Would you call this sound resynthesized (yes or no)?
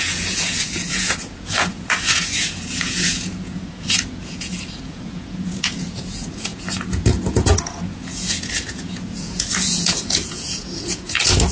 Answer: yes